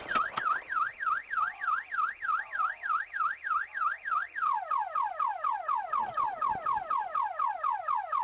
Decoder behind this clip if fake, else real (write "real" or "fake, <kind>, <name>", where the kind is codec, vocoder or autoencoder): real